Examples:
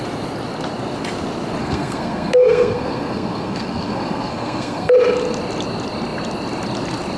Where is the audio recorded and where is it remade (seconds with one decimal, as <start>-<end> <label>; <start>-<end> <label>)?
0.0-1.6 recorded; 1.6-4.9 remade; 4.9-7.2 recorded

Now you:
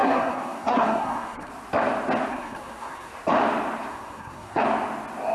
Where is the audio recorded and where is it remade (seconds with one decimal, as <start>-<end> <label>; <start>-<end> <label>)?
0.0-1.5 remade; 1.5-2.3 recorded; 2.3-3.1 remade; 3.1-3.9 recorded; 3.9-4.6 remade; 4.6-5.3 recorded

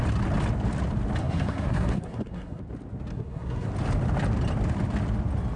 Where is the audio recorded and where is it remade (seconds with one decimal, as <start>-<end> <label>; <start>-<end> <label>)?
0.0-1.2 recorded; 1.2-2.6 remade; 2.6-3.1 recorded; 3.1-3.7 remade; 3.7-5.6 recorded